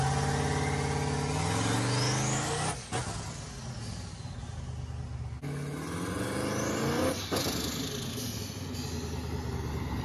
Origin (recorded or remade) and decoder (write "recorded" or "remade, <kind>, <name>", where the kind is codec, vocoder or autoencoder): recorded